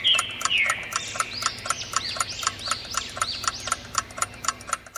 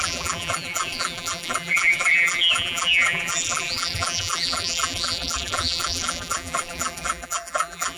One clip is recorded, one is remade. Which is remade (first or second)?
second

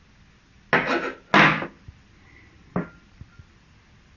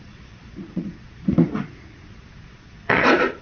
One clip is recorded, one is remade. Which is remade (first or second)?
second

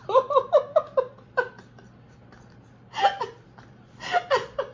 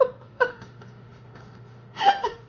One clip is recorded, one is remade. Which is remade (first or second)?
second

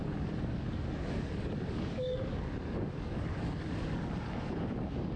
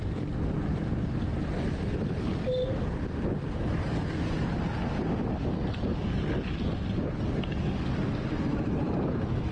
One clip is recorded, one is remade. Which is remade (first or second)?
first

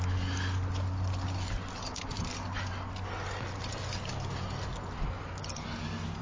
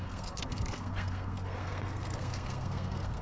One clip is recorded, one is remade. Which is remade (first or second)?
second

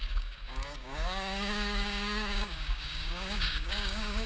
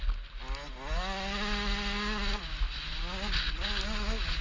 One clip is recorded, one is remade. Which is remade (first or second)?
first